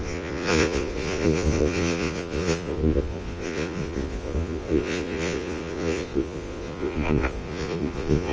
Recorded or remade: remade